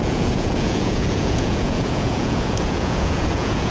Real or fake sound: fake